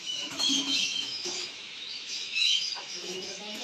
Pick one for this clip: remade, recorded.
remade